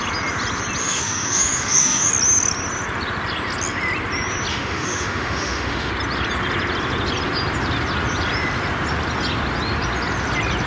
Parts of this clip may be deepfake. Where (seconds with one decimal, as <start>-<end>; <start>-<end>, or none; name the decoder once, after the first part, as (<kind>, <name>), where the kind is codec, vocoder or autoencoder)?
0.8-2.1 (autoencoder, DAC-VAE); 4.5-5.9